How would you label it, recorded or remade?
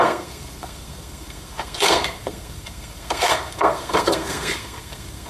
remade